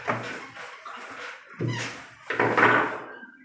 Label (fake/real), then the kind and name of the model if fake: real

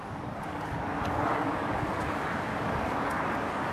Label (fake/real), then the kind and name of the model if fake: fake, codec, DAC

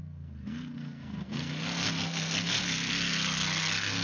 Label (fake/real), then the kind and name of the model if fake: fake, codec, SNAC